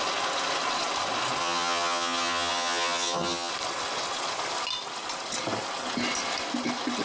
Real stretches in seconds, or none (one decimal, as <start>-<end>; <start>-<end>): 0.0-1.4; 3.5-7.0